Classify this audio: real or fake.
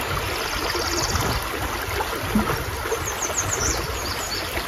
real